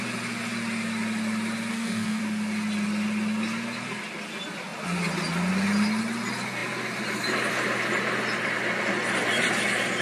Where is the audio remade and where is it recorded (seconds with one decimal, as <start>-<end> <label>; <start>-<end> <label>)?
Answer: 0.0-1.7 recorded; 1.7-2.2 remade; 2.2-10.0 recorded